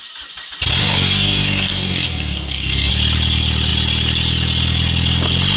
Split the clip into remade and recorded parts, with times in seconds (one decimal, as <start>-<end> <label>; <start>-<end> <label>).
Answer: 0.0-0.8 recorded; 0.8-2.9 remade; 2.9-5.6 recorded